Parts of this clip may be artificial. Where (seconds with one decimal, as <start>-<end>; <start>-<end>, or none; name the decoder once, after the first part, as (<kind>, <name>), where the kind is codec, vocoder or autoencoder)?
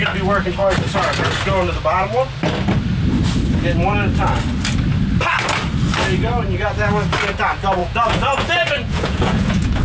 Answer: 7.8-9.8 (vocoder, Vocos)